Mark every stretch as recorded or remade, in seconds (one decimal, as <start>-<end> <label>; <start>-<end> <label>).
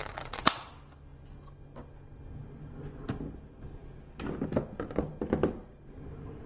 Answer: 0.0-0.7 remade; 0.7-6.5 recorded